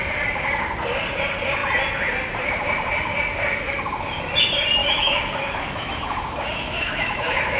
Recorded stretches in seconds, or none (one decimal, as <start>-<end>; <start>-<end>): 0.0-4.8